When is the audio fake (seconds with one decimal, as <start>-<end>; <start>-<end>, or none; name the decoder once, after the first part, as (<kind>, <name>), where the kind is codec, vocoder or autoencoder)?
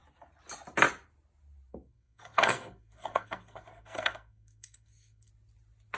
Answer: 1.7-5.3 (codec, SNAC)